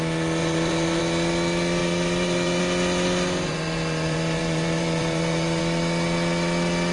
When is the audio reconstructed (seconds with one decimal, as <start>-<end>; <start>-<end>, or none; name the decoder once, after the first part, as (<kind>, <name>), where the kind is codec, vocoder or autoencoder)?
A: 0.4-1.0 (vocoder, BigVGAN v2); 1.8-2.6; 3.5-5.6